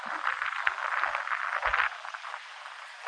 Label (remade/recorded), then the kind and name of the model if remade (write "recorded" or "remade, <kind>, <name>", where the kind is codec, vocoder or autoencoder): recorded